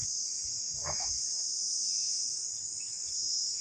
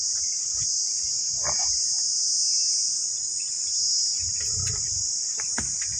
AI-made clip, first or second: first